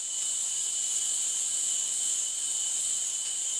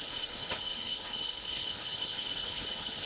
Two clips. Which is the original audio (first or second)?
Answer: first